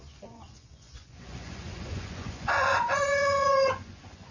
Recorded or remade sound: remade